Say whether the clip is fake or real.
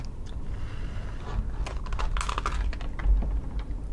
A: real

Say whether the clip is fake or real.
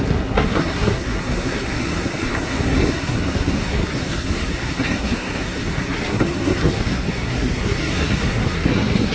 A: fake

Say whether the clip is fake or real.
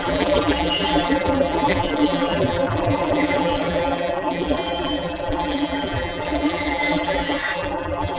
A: fake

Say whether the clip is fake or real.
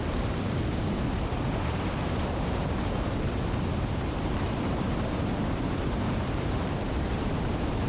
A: fake